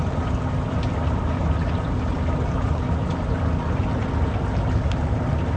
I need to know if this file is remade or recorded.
recorded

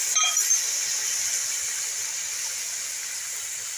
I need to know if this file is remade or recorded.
recorded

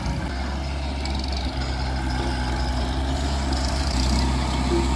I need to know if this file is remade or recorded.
recorded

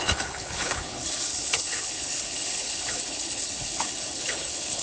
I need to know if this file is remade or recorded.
remade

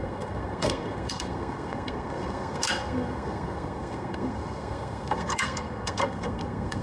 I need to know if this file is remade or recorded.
remade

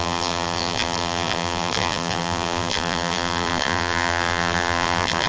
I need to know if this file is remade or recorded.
remade